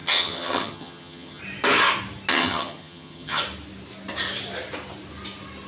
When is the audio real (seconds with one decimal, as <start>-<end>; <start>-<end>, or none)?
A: 1.4-2.3; 3.4-5.7